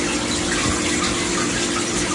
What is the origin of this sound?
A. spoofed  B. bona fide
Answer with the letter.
B